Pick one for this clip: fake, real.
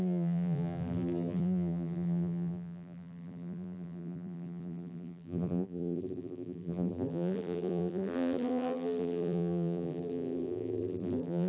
fake